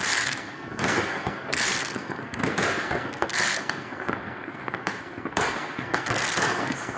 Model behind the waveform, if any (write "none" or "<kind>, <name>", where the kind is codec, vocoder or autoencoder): codec, SNAC